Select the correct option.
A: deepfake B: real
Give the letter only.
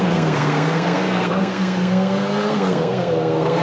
A